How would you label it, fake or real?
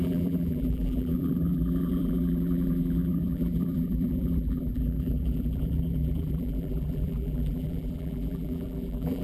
fake